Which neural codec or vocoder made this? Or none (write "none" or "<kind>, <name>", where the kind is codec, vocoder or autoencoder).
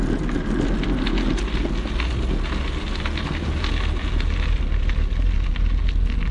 none